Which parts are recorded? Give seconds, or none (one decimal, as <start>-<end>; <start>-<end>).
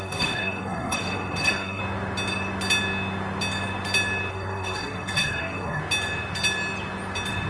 1.8-4.3; 5.8-7.5